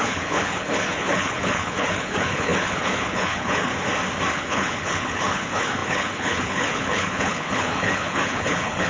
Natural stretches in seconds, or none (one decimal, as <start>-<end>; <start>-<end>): 3.7-4.3